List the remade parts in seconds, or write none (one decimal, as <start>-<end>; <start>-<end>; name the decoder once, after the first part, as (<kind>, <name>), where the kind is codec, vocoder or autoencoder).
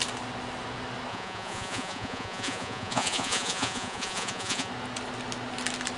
1.1-4.7 (vocoder, Vocos)